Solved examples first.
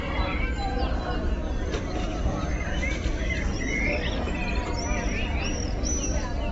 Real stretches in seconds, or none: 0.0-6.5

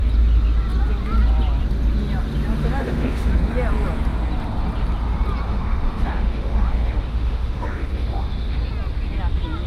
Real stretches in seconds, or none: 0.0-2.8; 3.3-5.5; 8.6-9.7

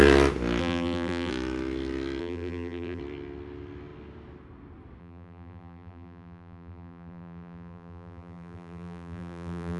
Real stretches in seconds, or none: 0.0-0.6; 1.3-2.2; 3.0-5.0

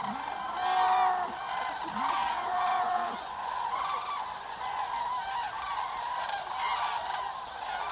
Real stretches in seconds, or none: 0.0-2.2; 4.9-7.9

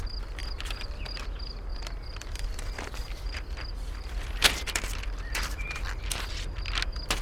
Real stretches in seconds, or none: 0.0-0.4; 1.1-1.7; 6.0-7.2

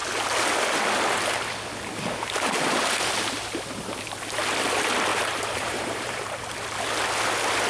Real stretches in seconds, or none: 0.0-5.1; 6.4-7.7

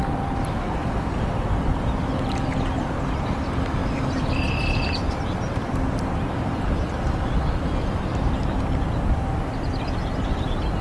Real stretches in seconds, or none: 0.0-3.8; 7.0-10.8

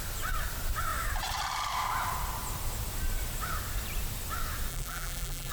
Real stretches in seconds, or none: 0.0-4.7